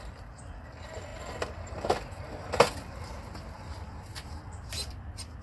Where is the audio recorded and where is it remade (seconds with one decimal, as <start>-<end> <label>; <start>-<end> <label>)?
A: 0.0-5.4 recorded